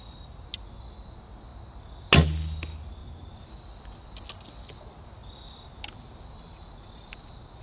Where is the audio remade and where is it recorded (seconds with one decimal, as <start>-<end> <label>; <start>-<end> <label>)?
0.0-3.0 recorded; 3.0-3.5 remade; 3.5-7.6 recorded